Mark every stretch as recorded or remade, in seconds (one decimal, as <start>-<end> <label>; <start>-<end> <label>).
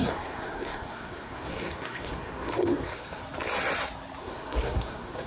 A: 0.0-3.2 remade; 3.2-4.2 recorded; 4.2-5.3 remade